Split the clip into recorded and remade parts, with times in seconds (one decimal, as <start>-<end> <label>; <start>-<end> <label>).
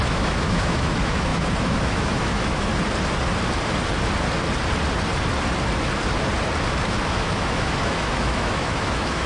0.0-2.7 remade; 2.7-7.1 recorded; 7.1-9.3 remade